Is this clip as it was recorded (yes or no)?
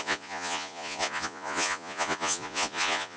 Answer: no